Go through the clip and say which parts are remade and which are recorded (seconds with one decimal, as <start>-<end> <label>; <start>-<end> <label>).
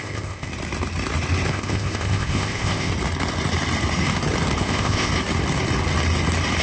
0.0-0.5 remade; 0.5-1.5 recorded; 1.5-2.9 remade; 2.9-4.6 recorded; 4.6-5.1 remade; 5.1-6.6 recorded